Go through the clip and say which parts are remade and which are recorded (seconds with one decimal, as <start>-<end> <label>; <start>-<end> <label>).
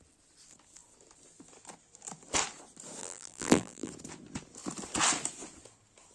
0.0-3.0 recorded; 3.0-3.9 remade; 3.9-6.1 recorded